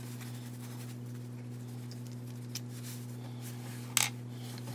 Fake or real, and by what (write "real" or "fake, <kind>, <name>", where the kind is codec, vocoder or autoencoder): real